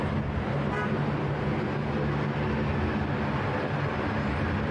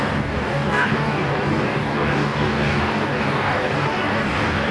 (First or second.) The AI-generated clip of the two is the second